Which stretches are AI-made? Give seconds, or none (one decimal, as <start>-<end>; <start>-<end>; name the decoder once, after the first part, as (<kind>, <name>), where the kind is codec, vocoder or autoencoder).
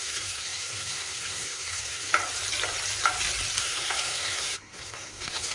0.0-2.1 (codec, SNAC); 3.6-5.5